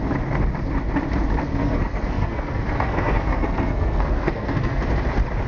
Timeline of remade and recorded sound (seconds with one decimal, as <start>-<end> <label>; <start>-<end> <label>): 0.0-1.5 recorded; 1.5-4.8 remade; 4.8-5.5 recorded